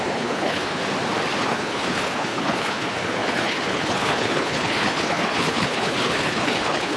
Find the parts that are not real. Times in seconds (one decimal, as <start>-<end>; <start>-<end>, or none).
0.0-0.8; 1.4-7.0